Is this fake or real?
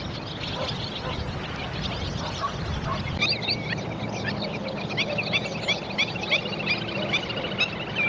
real